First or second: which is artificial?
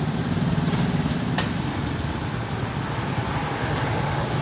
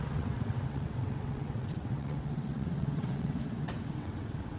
second